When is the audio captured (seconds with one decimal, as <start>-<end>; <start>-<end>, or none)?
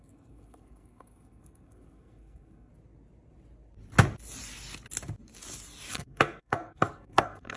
2.7-5.9